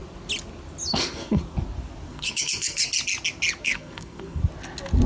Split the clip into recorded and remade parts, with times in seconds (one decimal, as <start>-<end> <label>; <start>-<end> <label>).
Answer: 0.0-0.9 recorded; 0.9-1.4 remade; 1.4-2.1 recorded; 2.1-2.8 remade; 2.8-3.6 recorded; 3.6-4.4 remade; 4.4-5.1 recorded